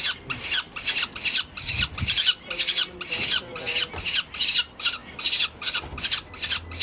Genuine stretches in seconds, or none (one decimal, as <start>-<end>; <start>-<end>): 0.0-6.8